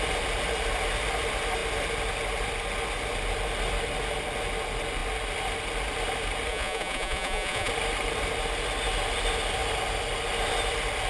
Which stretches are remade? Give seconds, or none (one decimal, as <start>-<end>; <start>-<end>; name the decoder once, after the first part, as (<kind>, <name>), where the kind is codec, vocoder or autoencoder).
6.5-7.7 (vocoder, Vocos)